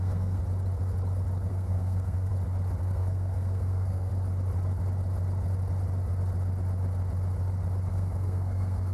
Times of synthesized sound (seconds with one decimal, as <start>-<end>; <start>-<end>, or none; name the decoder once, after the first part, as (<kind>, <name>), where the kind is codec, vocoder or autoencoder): 0.0-0.4 (codec, SNAC); 1.5-2.3; 2.8-4.1; 7.9-8.9